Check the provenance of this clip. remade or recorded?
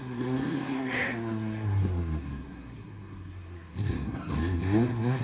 remade